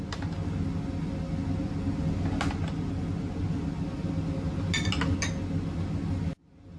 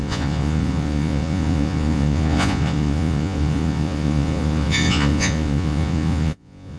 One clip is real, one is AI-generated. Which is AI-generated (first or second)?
second